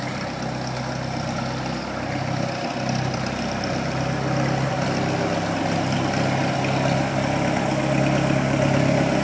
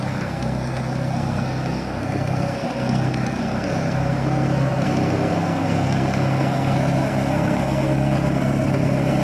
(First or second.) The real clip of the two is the first